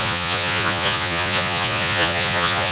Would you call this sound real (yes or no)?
no